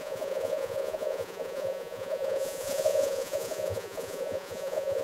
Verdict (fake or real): fake